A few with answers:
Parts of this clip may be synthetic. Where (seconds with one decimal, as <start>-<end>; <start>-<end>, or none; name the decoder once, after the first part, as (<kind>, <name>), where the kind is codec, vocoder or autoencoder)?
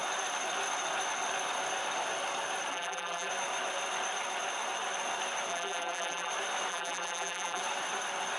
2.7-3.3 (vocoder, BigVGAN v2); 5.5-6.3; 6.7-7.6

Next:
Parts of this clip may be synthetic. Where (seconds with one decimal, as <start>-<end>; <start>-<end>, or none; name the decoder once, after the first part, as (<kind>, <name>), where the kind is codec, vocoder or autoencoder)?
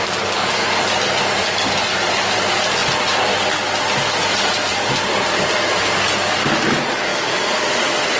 7.1-7.7 (vocoder, BigVGAN v2)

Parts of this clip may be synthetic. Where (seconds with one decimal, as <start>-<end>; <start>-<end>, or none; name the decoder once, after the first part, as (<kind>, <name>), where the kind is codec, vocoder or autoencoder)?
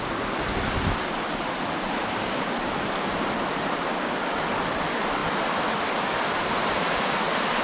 2.0-3.2 (vocoder, BigVGAN v2); 5.2-6.7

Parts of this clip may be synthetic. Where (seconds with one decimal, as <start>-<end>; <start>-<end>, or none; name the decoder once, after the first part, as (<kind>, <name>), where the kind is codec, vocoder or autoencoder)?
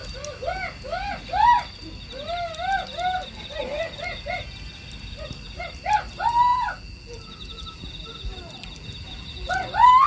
6.5-9.5 (vocoder, BigVGAN v2)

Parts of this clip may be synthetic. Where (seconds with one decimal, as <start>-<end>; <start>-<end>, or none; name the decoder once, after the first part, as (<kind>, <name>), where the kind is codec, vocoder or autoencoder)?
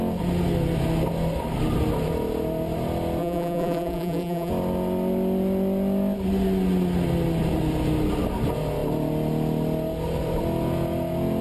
3.2-4.5 (vocoder, BigVGAN v2)